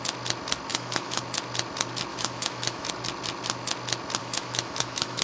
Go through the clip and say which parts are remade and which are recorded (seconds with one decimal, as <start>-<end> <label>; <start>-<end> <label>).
0.0-0.7 recorded; 0.7-1.2 remade; 1.2-2.1 recorded; 2.1-2.9 remade; 2.9-4.2 recorded; 4.2-5.2 remade